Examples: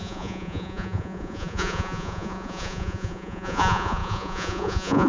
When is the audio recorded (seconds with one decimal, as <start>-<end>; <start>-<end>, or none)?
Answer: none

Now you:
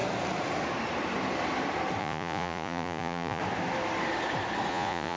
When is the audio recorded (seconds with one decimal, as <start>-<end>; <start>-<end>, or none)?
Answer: 0.0-2.0; 3.4-4.7

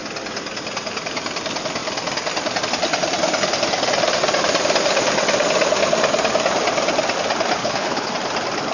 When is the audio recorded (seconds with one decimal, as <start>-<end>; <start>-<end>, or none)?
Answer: 0.0-7.6; 8.1-8.7

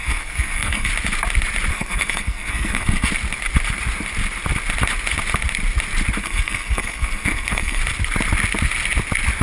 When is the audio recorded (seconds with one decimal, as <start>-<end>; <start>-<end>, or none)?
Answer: 0.9-1.7; 3.1-6.2; 7.8-9.4